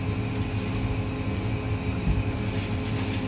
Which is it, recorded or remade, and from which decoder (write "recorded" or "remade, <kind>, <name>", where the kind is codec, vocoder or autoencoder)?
recorded